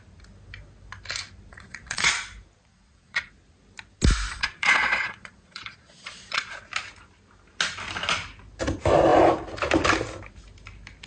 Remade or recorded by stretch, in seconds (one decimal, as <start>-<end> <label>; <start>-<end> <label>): 0.0-1.5 recorded; 1.5-2.1 remade; 2.1-2.7 recorded; 2.7-3.3 remade; 3.3-4.3 recorded; 4.3-6.5 remade; 6.5-11.1 recorded